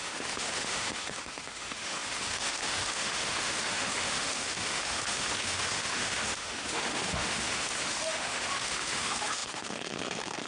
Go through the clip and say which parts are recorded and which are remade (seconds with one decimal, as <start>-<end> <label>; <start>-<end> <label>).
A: 0.0-10.5 remade